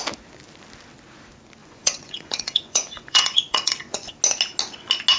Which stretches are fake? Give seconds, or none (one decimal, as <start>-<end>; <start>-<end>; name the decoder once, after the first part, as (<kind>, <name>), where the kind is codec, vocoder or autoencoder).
1.6-4.1 (vocoder, Vocos)